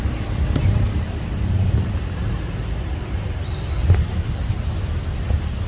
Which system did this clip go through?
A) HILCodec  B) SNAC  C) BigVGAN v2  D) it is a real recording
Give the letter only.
C